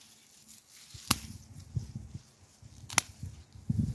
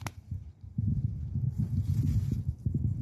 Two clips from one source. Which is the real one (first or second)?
first